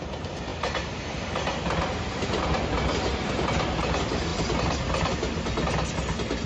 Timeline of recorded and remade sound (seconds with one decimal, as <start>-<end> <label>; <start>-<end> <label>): 0.0-6.5 recorded